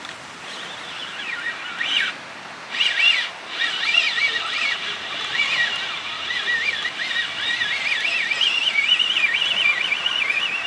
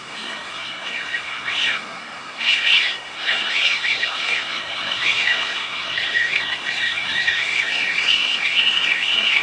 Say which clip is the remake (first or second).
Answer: second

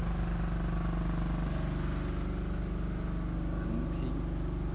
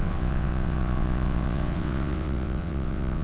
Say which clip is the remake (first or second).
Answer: second